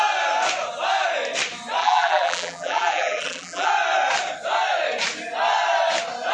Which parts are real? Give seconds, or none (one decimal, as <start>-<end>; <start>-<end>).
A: 0.0-1.8; 3.7-6.3